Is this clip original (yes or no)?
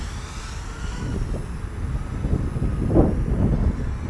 yes